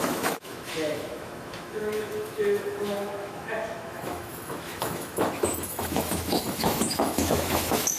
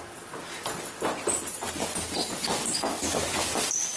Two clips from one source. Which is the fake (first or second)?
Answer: first